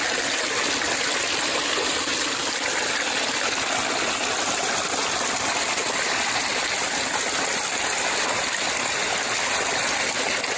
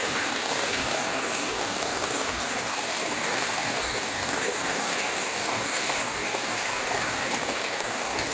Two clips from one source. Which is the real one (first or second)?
first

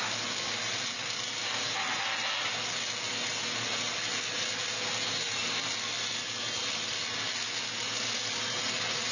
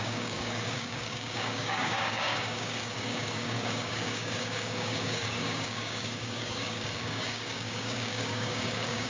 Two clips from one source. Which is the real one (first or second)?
first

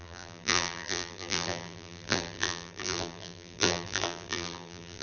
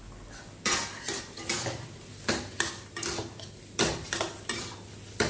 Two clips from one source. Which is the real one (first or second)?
second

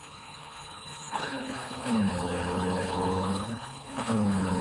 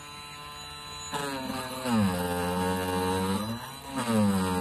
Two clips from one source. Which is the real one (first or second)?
second